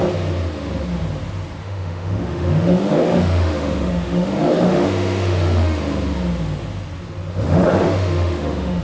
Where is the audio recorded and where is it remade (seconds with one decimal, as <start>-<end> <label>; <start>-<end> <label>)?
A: 0.0-1.6 recorded; 1.6-5.8 remade; 5.8-7.3 recorded; 7.3-8.8 remade